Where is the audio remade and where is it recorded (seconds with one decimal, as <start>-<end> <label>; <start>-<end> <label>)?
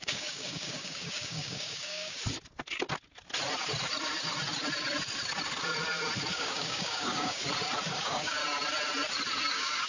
0.0-2.2 remade; 2.2-6.3 recorded; 6.3-7.4 remade; 7.4-7.9 recorded; 7.9-8.4 remade; 8.4-9.5 recorded; 9.5-9.9 remade